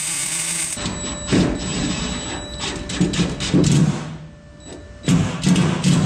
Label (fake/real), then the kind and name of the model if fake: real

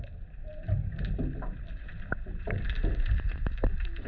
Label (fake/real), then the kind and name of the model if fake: real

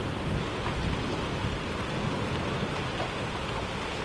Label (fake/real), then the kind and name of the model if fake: real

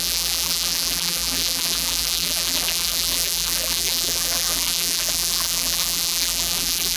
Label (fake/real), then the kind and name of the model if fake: fake, vocoder, BigVGAN v2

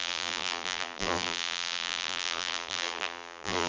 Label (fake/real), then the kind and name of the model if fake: fake, vocoder, BigVGAN v2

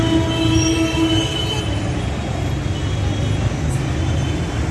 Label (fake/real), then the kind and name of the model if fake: real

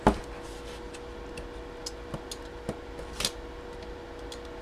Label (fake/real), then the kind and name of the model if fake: real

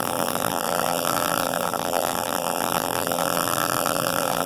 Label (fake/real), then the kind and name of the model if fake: fake, vocoder, BigVGAN v2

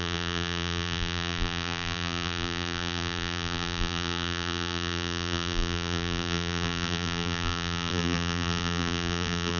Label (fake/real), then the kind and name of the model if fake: fake, vocoder, BigVGAN v2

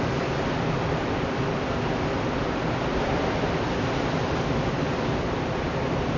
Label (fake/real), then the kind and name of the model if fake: real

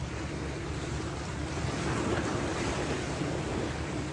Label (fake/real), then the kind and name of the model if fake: real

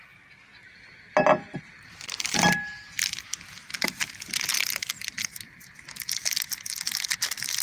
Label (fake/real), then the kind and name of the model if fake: real